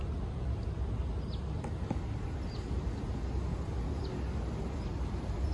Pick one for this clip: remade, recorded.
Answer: recorded